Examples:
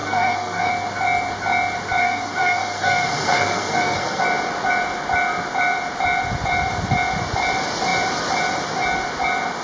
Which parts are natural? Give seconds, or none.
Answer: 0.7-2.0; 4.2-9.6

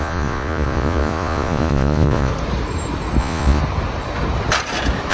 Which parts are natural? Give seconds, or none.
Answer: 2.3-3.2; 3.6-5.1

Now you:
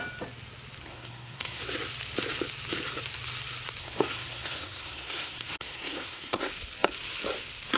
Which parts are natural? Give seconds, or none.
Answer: 0.0-0.8; 1.6-3.8; 6.5-7.8

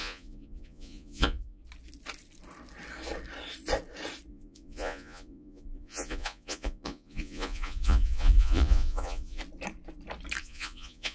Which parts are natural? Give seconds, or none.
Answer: 1.6-4.3; 9.4-10.4

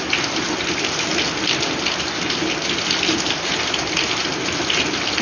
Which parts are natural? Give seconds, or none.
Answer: 0.0-5.2